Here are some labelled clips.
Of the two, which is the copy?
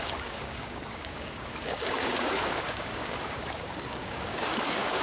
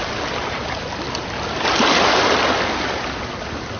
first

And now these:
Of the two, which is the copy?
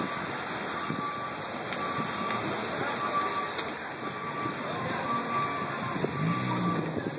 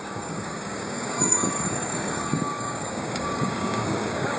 second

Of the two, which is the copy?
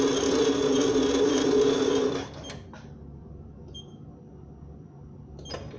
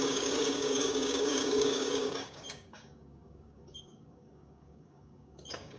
second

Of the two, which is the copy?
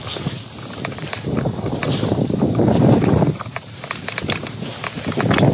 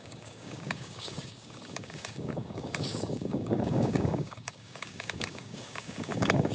second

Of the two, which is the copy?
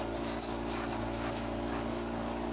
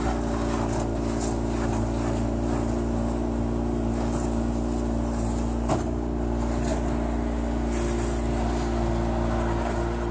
first